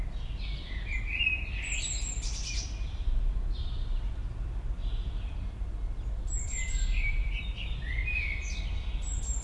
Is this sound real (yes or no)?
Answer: no